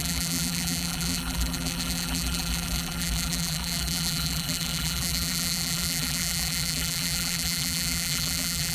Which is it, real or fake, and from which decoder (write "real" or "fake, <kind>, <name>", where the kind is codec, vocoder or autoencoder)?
fake, vocoder, BigVGAN v2